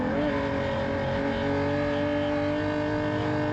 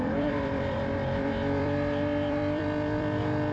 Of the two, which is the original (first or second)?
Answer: first